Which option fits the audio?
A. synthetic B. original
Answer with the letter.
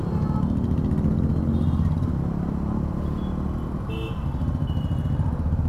B